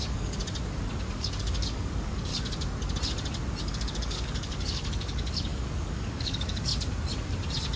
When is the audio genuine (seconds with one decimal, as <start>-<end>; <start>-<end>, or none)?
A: 0.4-1.1; 2.3-3.6; 6.7-7.8